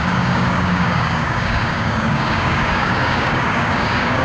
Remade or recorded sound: remade